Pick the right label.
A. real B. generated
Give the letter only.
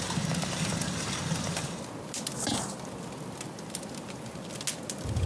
A